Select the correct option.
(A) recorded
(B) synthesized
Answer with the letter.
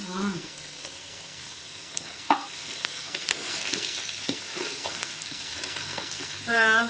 B